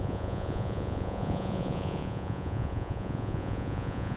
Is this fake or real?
fake